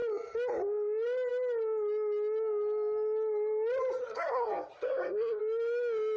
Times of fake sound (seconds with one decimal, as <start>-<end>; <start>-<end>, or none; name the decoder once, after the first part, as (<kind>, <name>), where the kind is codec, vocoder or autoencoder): 4.0-5.4 (codec, SNAC)